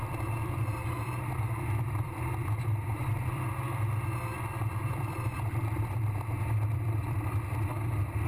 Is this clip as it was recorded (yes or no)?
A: no